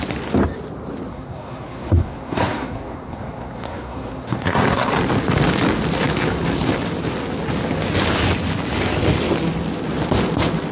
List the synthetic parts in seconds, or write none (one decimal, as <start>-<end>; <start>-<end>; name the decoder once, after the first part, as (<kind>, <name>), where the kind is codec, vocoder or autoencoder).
1.1-4.9 (codec, SNAC)

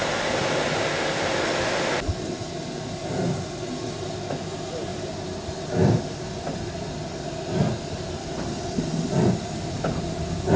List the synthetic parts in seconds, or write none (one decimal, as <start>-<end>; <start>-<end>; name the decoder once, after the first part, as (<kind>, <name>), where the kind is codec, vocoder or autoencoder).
none

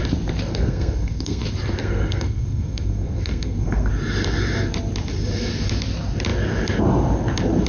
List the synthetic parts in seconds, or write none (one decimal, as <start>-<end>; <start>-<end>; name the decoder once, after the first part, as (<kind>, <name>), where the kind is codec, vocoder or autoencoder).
0.5-1.4 (codec, SNAC); 1.8-3.9

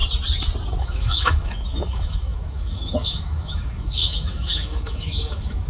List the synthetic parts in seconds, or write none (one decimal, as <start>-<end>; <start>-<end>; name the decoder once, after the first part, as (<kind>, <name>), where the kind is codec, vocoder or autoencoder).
0.8-5.7 (autoencoder, DAC-VAE)